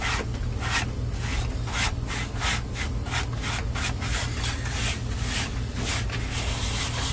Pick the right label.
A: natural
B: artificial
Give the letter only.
A